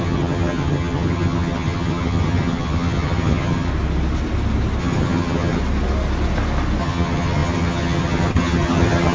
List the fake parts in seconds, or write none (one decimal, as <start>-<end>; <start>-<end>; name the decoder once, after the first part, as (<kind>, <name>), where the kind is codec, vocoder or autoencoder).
0.0-3.7 (vocoder, HiFi-GAN); 4.8-5.6; 6.8-9.1